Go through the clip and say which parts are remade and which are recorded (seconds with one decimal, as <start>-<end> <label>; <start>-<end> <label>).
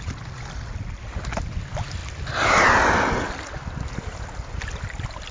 0.0-5.3 recorded